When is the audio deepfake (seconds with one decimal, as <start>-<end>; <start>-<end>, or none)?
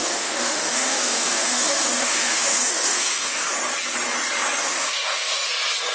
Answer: 0.0-3.5; 4.6-5.5